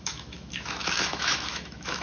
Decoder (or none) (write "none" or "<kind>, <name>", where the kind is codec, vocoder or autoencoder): autoencoder, DAC-VAE